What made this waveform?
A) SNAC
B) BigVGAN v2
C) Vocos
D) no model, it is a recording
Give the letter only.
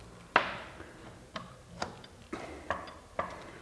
D